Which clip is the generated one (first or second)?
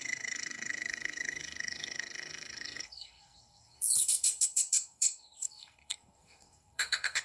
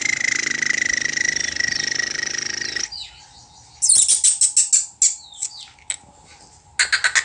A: first